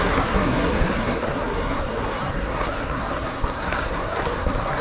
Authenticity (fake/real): fake